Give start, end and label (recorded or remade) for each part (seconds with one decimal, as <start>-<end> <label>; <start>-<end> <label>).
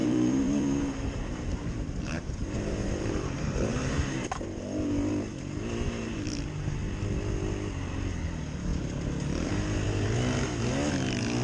0.0-5.1 remade; 5.1-8.7 recorded; 8.7-9.5 remade; 9.5-11.4 recorded